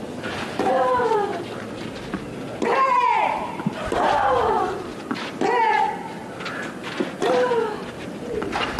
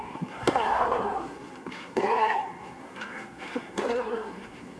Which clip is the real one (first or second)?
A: first